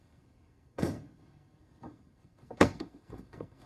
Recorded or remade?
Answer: remade